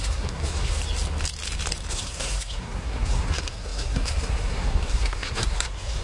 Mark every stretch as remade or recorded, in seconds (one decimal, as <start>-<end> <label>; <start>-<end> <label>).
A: 0.0-0.8 remade; 0.8-1.9 recorded; 1.9-6.0 remade